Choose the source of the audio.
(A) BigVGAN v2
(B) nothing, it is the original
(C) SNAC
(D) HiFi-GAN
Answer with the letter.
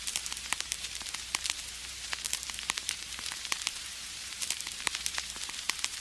A